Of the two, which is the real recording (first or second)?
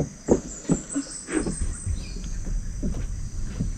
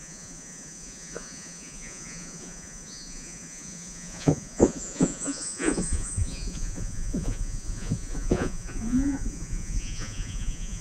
first